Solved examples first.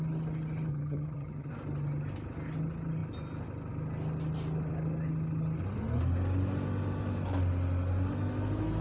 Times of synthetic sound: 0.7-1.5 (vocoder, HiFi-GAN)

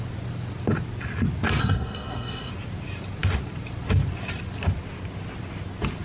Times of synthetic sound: 1.6-2.5 (codec, SNAC)

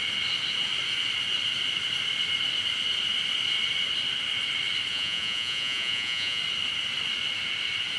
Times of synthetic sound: 4.9-6.4 (vocoder, Vocos)

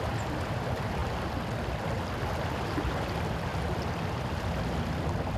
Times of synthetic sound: none

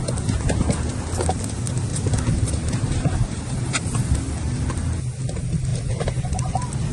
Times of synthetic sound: 1.9-4.1 (vocoder, BigVGAN v2)

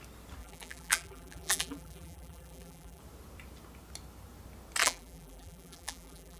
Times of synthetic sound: 0.4-3.0 (vocoder, BigVGAN v2); 4.8-6.4

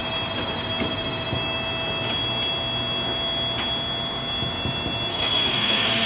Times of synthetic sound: 5.1-6.1 (codec, SNAC)

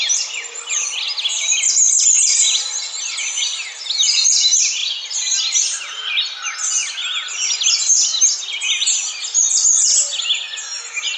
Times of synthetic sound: none